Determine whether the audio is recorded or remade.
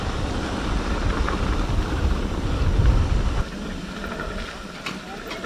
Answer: recorded